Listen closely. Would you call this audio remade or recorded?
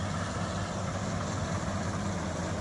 recorded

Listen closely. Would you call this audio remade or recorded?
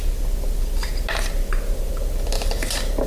recorded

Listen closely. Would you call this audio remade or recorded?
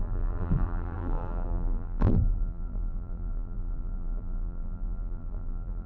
remade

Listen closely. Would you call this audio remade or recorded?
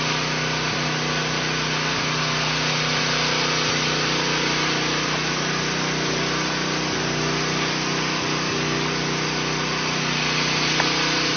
recorded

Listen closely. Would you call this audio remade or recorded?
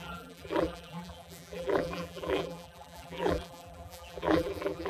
remade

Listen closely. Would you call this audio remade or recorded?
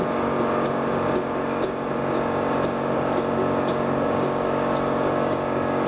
remade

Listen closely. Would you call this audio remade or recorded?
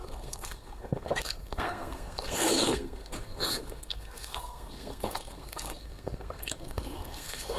remade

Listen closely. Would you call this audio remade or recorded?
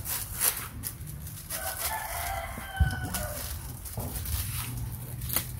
recorded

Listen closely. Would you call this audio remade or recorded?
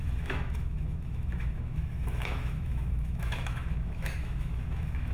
remade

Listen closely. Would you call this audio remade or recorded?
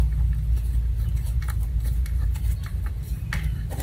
recorded